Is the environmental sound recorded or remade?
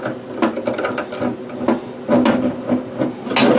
recorded